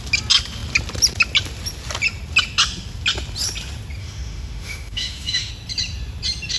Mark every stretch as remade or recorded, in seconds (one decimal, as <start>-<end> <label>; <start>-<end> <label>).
0.0-4.0 recorded; 4.0-5.5 remade; 5.5-6.6 recorded